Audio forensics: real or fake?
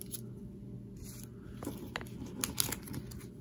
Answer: real